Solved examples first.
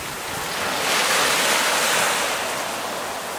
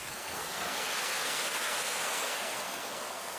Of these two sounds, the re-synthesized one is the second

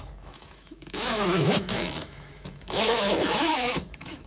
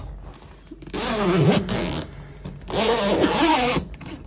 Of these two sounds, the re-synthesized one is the first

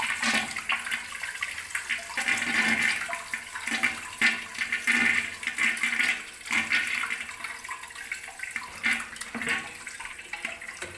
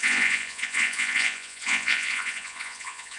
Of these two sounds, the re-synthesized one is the second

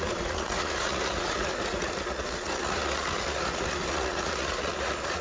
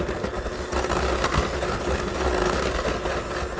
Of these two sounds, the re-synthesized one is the first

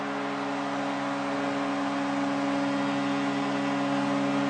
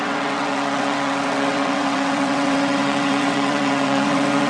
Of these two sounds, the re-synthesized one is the second